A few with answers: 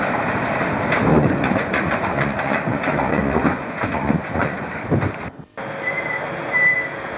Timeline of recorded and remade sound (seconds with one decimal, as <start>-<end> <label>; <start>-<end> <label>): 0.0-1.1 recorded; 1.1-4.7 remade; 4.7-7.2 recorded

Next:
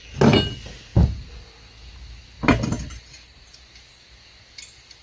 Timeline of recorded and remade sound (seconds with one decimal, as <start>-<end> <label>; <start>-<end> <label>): 0.0-5.0 recorded

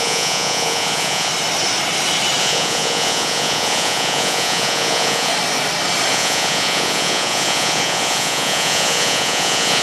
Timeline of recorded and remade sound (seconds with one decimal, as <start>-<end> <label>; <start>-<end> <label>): 0.0-1.3 remade; 1.3-2.4 recorded; 2.4-5.3 remade; 5.3-6.1 recorded; 6.1-9.8 remade